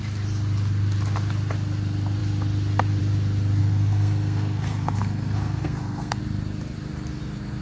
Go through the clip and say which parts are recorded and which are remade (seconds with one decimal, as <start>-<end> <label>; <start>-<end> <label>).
0.0-3.6 recorded; 3.6-6.2 remade; 6.2-7.6 recorded